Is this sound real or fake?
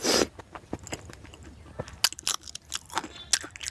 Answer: real